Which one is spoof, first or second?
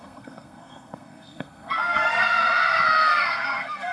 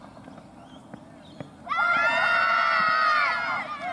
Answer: first